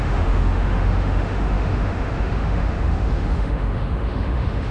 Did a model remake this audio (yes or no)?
yes